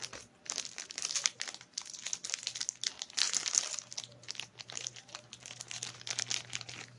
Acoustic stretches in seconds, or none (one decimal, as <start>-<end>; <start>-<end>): 0.0-7.0